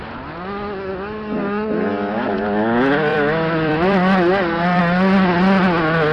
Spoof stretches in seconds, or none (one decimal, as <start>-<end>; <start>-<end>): 3.1-4.8